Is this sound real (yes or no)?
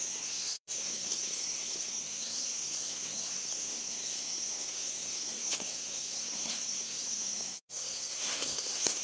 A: no